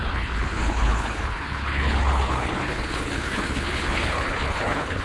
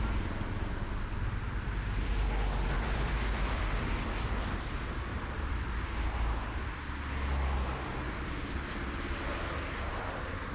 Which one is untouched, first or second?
second